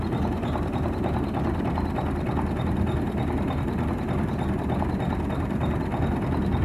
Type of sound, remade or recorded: recorded